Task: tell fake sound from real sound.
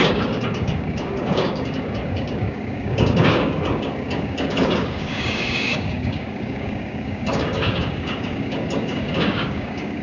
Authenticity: fake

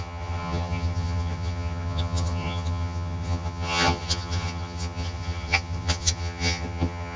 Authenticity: fake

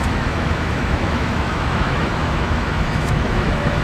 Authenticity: fake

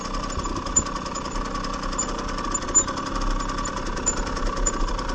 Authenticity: real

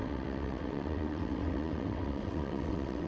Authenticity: fake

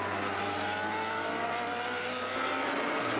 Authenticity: real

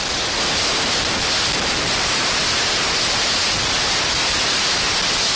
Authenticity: real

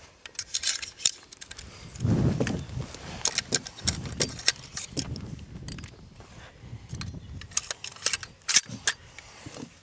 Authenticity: real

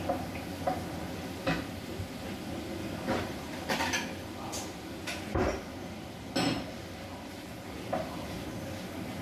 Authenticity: real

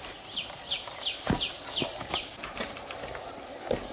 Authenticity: real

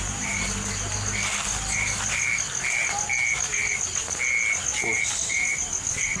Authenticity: real